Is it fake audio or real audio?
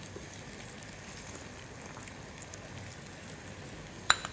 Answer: real